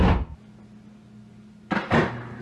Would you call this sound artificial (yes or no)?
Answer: no